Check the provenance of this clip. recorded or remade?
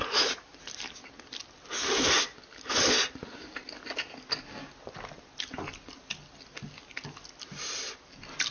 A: recorded